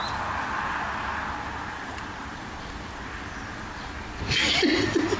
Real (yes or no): yes